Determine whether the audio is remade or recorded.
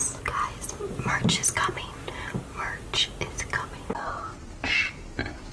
recorded